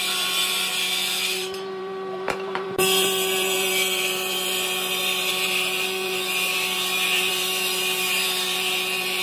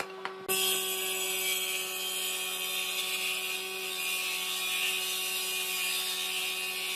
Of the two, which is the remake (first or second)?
first